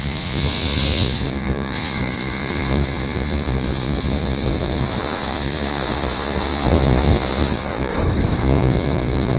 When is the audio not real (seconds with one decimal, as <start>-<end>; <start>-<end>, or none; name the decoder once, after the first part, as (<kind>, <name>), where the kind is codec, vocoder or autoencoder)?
0.0-7.9 (vocoder, Vocos); 8.4-9.4